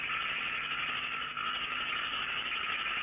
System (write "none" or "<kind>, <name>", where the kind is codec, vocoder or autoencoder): none